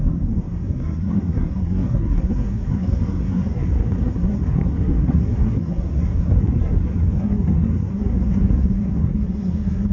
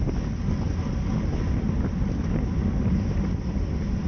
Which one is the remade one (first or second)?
first